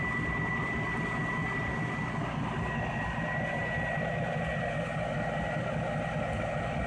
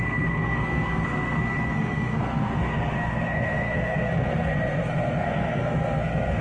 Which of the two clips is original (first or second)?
first